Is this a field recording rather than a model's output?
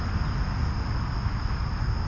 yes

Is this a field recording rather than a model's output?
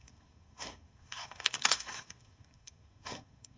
no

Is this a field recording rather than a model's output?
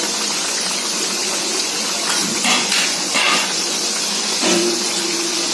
no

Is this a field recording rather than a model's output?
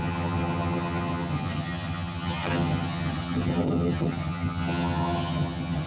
no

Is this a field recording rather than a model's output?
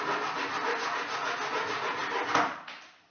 yes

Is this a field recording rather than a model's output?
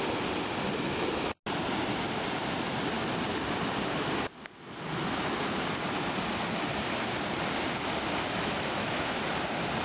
yes